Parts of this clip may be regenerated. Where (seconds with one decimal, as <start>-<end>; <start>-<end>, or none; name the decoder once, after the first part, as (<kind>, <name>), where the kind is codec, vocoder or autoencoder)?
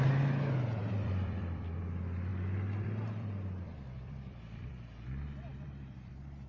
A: 0.8-1.8 (vocoder, BigVGAN v2); 2.3-4.7; 5.5-6.1